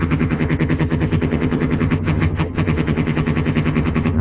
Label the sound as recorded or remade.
remade